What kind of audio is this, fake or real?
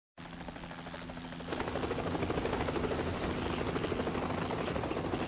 real